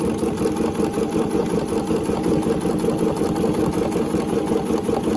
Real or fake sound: real